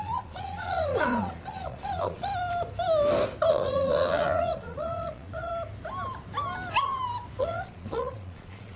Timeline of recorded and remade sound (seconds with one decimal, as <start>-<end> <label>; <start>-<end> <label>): 0.0-2.3 remade; 2.3-3.5 recorded; 3.5-5.5 remade; 5.5-7.4 recorded; 7.4-8.8 remade